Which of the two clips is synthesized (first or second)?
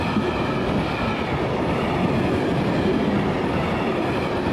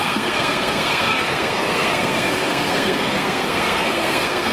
second